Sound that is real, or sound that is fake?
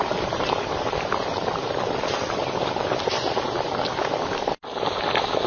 real